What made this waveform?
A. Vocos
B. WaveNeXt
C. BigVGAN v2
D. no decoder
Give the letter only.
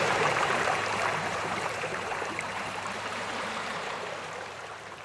C